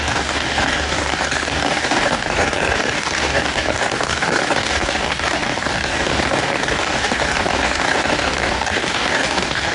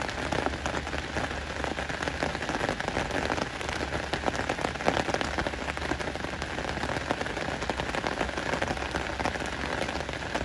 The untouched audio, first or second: second